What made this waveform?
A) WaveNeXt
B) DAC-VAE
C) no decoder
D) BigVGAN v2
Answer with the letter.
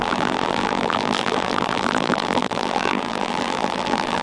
D